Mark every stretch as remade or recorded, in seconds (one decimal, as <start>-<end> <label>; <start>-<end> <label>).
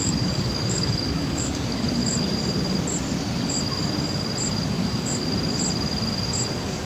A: 0.0-2.0 remade; 2.0-4.7 recorded; 4.7-5.2 remade; 5.2-6.5 recorded; 6.5-6.9 remade